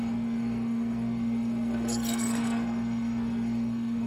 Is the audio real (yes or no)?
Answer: no